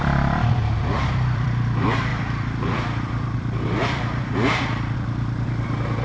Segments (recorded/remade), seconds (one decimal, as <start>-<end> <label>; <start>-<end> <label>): 0.0-6.0 remade